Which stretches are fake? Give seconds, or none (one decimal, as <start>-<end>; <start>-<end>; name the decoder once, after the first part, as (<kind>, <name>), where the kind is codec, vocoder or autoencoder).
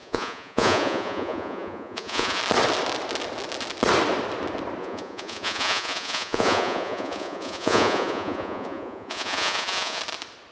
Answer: 0.0-2.4 (vocoder, Vocos); 4.8-10.0